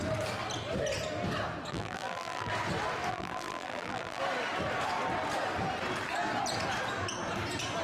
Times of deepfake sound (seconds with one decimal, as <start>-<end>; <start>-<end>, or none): 1.7-2.5; 3.1-4.2